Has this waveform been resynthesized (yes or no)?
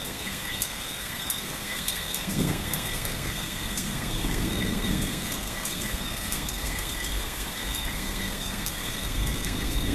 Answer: yes